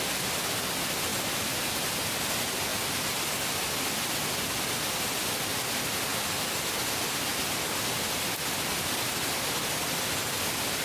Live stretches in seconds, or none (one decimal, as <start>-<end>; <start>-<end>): 0.0-1.1; 1.9-10.8